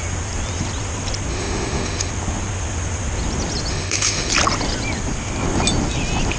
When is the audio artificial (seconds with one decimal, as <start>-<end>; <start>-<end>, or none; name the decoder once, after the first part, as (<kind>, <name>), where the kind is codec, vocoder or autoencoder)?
1.3-2.1 (autoencoder, DAC-VAE); 3.7-4.3